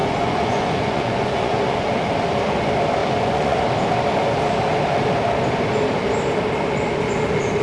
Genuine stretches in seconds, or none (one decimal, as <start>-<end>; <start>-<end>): 1.9-3.0; 3.6-7.6